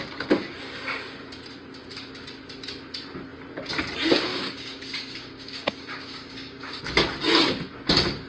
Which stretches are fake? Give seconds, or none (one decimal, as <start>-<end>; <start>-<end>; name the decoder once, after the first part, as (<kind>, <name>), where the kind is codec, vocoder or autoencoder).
4.3-6.8 (codec, DAC)